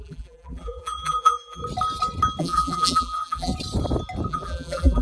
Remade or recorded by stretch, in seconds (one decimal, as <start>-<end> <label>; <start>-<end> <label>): 0.0-1.6 remade; 1.6-2.4 recorded; 2.4-3.5 remade; 3.5-4.3 recorded; 4.3-5.0 remade